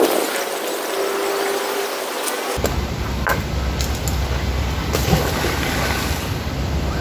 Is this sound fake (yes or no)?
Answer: no